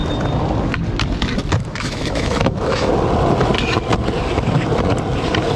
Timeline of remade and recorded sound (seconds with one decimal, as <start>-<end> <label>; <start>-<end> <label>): 0.0-1.7 recorded; 1.7-2.9 remade; 2.9-5.6 recorded